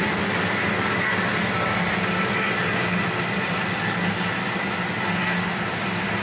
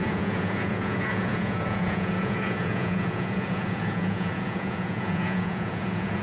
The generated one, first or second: second